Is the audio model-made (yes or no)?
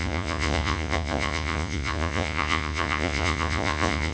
yes